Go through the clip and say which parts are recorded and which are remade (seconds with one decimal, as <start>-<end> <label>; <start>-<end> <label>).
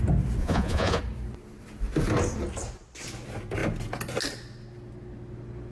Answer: 0.0-0.4 recorded; 0.4-1.0 remade; 1.0-5.7 recorded